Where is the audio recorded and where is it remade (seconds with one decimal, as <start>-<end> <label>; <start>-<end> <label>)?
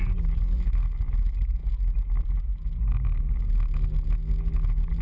0.0-5.0 recorded